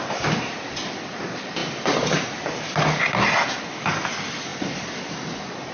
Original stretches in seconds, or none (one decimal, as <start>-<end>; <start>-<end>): 0.0-5.7